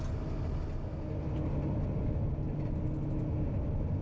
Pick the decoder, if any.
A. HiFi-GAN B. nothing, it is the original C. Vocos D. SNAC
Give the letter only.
B